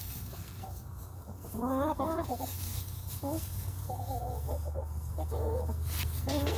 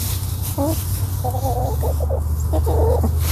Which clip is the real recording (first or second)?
second